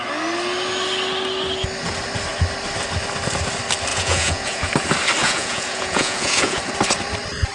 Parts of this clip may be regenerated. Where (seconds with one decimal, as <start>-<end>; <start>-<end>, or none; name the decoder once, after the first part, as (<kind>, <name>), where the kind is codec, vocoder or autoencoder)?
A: 3.9-4.7 (vocoder, Vocos); 5.2-6.6